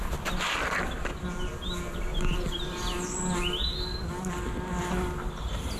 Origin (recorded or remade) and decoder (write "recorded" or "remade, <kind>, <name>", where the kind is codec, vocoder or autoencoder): recorded